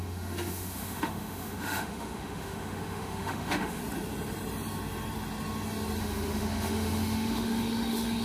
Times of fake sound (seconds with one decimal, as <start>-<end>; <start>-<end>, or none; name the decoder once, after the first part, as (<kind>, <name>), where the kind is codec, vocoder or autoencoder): 0.0-3.8 (autoencoder, DAC-VAE); 6.0-8.2